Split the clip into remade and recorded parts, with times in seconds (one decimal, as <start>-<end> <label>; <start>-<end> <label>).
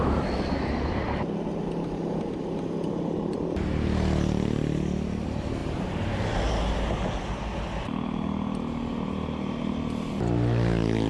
0.0-11.1 recorded